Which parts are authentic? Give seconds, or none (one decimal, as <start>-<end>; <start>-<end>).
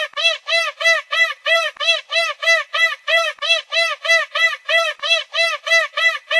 0.0-6.4